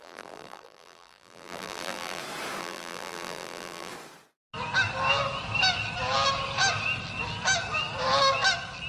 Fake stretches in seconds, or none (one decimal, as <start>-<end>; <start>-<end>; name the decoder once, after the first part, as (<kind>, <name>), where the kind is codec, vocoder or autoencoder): 0.0-2.2 (vocoder, BigVGAN v2); 2.6-3.9